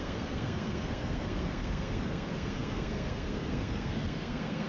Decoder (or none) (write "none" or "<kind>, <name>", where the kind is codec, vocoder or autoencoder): codec, SNAC